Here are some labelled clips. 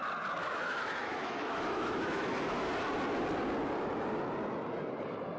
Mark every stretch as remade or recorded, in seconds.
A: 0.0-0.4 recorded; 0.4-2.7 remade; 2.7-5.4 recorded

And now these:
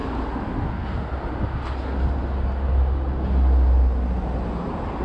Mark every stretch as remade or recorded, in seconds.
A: 0.0-5.0 recorded

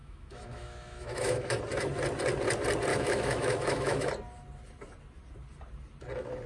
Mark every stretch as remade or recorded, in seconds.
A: 0.0-1.6 remade; 1.6-2.9 recorded; 2.9-4.1 remade; 4.1-6.5 recorded